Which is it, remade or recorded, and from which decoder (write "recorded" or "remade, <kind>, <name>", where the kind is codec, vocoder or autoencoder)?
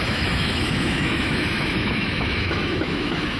remade, autoencoder, DAC-VAE